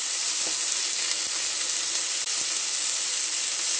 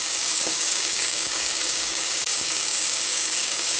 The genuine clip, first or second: first